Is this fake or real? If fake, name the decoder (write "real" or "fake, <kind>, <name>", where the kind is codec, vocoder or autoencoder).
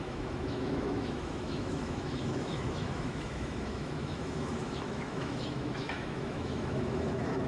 fake, autoencoder, DAC-VAE